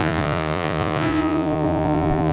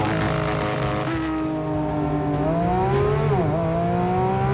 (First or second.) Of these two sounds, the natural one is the second